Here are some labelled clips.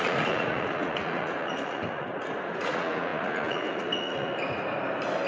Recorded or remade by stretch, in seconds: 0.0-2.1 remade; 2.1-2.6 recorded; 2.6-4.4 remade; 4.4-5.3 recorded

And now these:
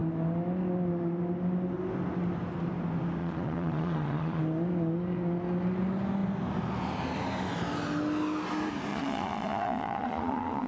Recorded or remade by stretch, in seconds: 0.0-3.2 recorded; 3.2-4.4 remade; 4.4-8.9 recorded; 8.9-10.7 remade

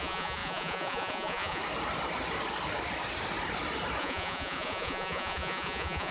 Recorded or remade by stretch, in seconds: 0.0-1.6 remade; 1.6-4.0 recorded; 4.0-6.1 remade

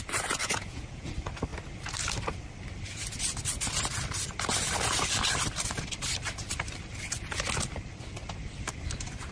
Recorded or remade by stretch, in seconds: 0.0-0.4 recorded; 0.4-1.1 remade; 1.1-9.3 recorded